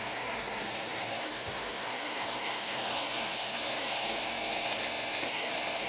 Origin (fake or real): fake